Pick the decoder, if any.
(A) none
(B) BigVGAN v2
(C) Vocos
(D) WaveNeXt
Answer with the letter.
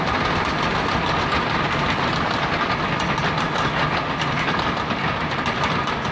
A